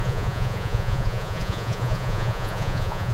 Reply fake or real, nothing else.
fake